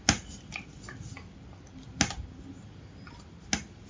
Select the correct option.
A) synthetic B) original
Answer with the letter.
B